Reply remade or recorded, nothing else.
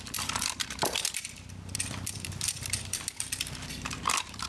remade